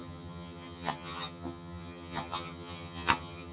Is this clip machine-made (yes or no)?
yes